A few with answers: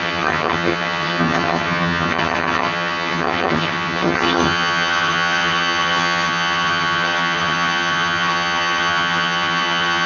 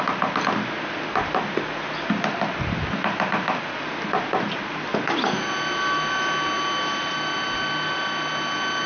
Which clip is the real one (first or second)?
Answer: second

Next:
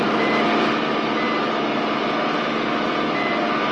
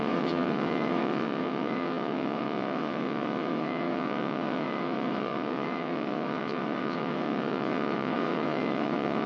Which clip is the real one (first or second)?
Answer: first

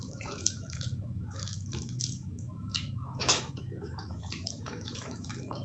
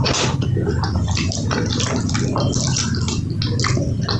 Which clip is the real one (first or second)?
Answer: second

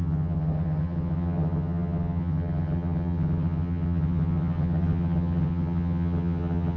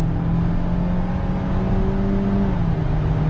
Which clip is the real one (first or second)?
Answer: second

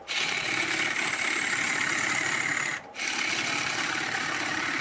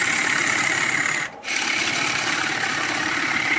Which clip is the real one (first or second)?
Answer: first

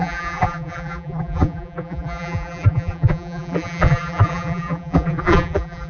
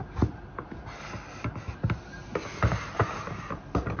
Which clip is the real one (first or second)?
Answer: second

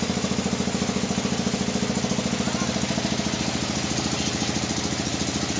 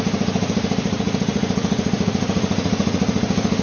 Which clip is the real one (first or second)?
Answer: first